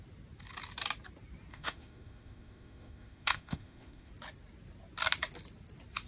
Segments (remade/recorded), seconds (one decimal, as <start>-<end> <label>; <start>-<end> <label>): 0.0-1.5 recorded; 1.5-4.1 remade; 4.1-6.1 recorded